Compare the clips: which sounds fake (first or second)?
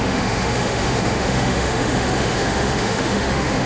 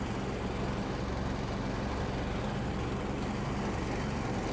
first